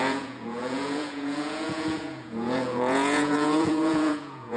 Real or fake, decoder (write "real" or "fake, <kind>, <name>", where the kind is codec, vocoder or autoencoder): fake, vocoder, Vocos